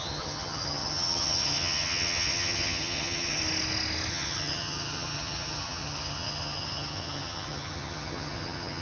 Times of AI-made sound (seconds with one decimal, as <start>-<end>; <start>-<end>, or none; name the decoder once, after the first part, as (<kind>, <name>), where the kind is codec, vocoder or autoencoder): 0.0-3.4 (vocoder, HiFi-GAN); 4.1-8.8

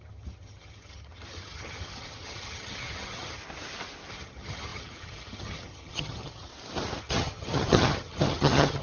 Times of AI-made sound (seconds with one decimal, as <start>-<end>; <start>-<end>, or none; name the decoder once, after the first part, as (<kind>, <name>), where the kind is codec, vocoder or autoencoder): 0.0-3.4 (vocoder, HiFi-GAN); 4.1-6.5; 7.0-8.8

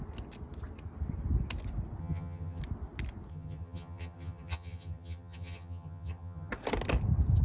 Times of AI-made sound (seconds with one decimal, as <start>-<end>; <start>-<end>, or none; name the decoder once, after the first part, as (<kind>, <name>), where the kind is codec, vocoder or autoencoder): 2.0-2.6 (vocoder, HiFi-GAN); 3.3-6.5